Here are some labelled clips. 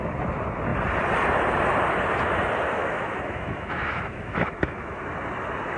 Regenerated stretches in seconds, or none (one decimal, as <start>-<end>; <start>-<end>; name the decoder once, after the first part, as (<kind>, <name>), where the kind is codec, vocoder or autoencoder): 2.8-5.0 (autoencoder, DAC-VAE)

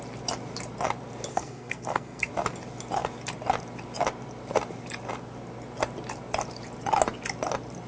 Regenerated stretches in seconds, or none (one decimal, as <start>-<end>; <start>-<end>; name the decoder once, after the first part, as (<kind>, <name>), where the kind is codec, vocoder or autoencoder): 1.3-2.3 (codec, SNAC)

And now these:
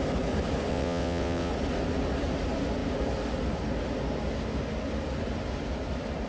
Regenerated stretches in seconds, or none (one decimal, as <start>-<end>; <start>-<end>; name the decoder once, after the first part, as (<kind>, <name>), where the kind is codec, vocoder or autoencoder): 0.7-1.5 (vocoder, WaveNeXt)